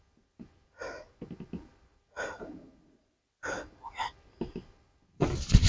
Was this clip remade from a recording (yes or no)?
no